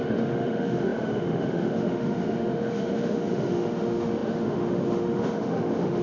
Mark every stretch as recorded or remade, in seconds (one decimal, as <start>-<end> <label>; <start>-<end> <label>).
0.0-6.0 remade